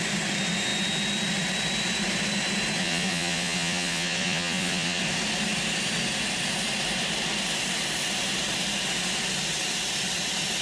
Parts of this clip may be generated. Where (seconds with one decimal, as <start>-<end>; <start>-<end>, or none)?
2.8-5.0